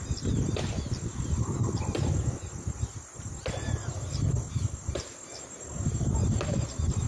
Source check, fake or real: real